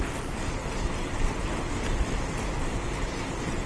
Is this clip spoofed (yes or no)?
no